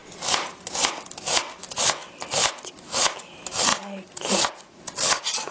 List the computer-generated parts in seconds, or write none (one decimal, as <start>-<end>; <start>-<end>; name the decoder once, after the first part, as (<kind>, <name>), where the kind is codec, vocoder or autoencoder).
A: 3.7-4.8 (vocoder, Vocos)